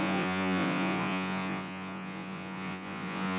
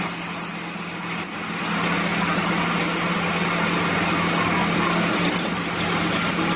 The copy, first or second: first